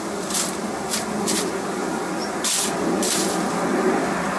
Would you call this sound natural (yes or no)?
yes